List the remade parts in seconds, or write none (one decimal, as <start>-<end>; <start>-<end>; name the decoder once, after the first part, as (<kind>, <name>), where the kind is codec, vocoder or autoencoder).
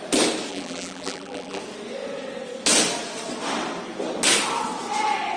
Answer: 0.5-1.6 (vocoder, BigVGAN v2)